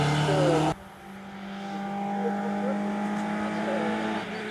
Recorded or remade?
recorded